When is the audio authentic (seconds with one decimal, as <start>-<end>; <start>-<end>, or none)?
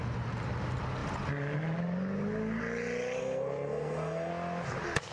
0.0-3.2; 4.3-5.1